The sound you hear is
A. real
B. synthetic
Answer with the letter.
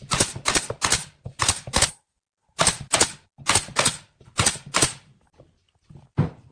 A